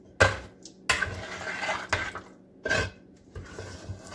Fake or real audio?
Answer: real